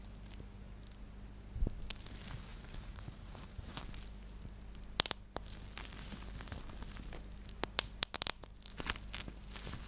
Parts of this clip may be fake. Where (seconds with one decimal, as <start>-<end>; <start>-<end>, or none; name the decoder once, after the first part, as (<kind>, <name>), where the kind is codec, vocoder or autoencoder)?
2.5-3.8 (vocoder, Vocos)